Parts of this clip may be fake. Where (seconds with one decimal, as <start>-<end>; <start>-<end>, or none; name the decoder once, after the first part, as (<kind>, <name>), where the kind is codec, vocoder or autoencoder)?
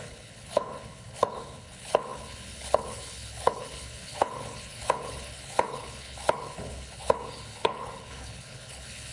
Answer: 0.0-9.1 (codec, HILCodec)